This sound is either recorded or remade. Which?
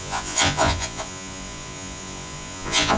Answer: remade